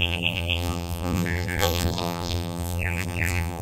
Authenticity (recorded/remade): remade